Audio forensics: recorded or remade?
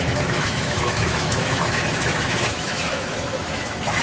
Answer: remade